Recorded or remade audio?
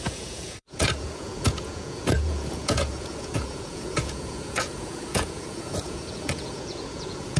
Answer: remade